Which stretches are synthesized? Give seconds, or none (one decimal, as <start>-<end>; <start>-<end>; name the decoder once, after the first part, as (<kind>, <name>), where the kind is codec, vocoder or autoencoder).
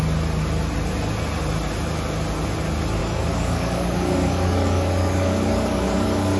3.0-6.4 (codec, DAC)